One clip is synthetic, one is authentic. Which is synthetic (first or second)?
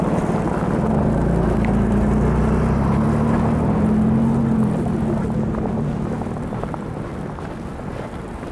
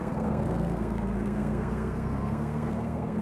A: second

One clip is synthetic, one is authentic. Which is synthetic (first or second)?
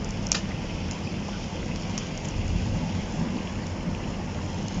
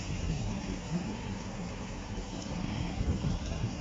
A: second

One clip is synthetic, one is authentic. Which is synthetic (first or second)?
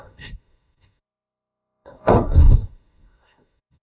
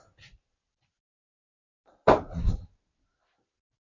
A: first